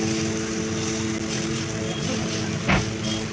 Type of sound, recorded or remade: recorded